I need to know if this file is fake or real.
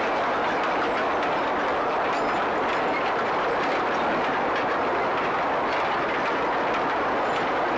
real